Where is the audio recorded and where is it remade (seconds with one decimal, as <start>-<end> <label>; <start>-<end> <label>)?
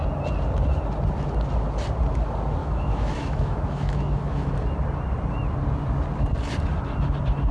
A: 0.0-2.6 recorded; 2.6-4.5 remade; 4.5-7.5 recorded